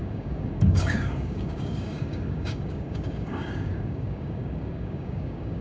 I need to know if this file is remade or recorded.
remade